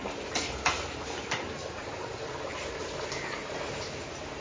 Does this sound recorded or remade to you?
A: remade